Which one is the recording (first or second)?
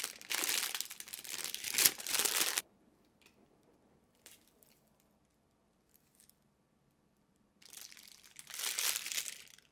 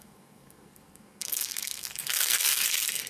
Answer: first